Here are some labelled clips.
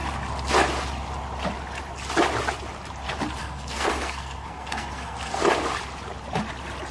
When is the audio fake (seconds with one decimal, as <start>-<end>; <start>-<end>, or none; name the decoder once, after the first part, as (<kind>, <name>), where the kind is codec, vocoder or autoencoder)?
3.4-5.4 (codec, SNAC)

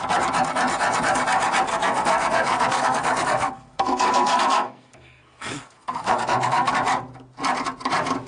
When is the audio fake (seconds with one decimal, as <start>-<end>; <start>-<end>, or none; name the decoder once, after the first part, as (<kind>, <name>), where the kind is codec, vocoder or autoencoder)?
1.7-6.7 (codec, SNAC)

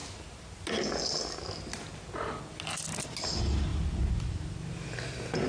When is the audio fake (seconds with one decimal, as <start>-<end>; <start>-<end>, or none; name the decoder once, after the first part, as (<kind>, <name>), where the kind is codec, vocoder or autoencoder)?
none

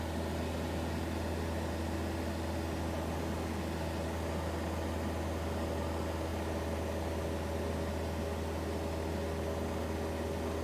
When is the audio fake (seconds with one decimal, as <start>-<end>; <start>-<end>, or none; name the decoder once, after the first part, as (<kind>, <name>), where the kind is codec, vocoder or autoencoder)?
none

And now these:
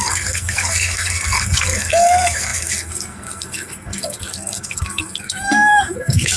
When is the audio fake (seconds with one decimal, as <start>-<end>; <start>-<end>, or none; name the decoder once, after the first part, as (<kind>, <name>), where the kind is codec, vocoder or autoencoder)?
0.0-6.4 (codec, SNAC)